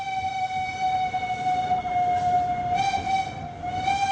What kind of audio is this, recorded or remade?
recorded